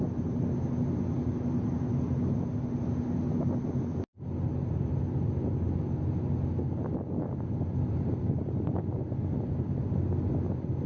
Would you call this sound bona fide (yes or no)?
yes